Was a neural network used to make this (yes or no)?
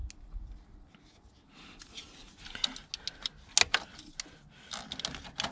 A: no